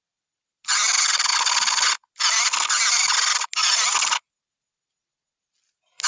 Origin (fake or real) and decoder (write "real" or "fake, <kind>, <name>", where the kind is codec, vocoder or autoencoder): real